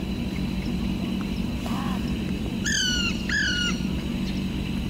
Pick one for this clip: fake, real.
real